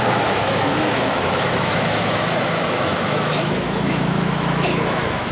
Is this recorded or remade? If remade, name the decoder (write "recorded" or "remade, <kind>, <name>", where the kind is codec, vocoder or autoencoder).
remade, autoencoder, DAC-VAE